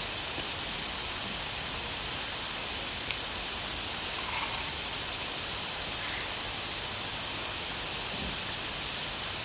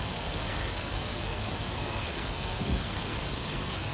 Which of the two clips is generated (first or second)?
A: second